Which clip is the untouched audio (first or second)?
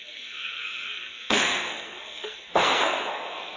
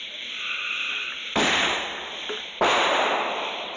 second